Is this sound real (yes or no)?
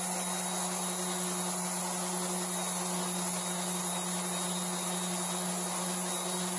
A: yes